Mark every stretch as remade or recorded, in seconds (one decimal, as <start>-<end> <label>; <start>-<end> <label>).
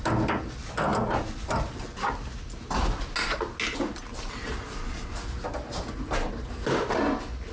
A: 0.0-7.5 recorded